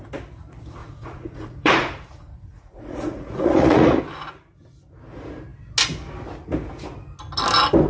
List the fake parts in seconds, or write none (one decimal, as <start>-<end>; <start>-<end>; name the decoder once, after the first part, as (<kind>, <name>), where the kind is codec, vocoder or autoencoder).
0.8-4.0 (vocoder, Vocos)